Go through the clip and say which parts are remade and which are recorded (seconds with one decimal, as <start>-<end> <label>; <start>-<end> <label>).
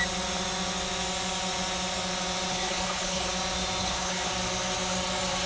0.0-2.5 recorded; 2.5-3.3 remade; 3.3-3.8 recorded; 3.8-4.3 remade; 4.3-5.5 recorded